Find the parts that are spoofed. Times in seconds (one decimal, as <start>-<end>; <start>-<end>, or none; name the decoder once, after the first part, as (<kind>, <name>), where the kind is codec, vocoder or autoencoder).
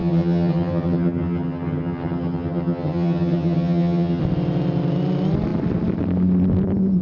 0.0-4.2 (vocoder, HiFi-GAN)